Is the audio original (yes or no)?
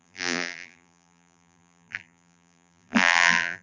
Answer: no